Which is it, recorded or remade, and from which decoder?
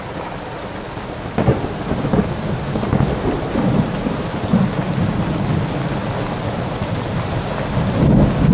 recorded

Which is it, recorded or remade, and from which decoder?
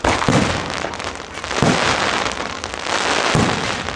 recorded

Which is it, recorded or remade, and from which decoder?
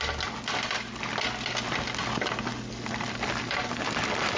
recorded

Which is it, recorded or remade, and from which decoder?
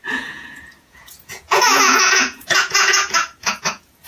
remade, vocoder, Vocos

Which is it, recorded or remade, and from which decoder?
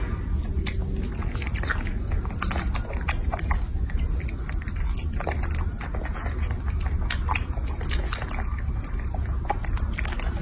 recorded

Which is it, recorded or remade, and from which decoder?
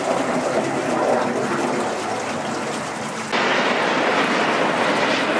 recorded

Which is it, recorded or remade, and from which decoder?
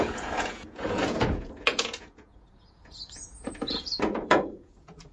remade, vocoder, Vocos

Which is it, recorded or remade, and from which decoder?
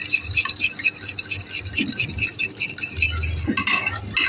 recorded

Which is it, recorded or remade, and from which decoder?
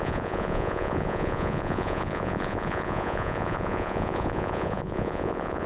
remade, vocoder, Vocos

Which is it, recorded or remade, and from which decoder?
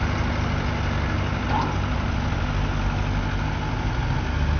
recorded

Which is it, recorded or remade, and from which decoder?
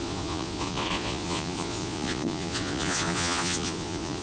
remade, vocoder, Vocos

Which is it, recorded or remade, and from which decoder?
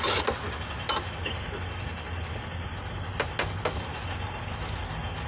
recorded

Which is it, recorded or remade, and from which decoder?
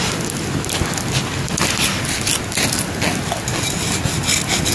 recorded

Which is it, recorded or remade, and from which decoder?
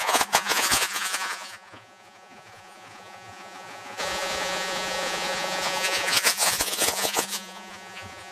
remade, vocoder, Vocos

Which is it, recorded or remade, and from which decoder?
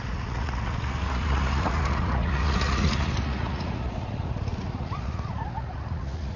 remade, vocoder, Vocos